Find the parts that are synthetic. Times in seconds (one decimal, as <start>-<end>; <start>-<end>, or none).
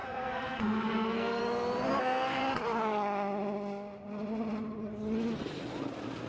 0.0-1.4; 2.0-2.4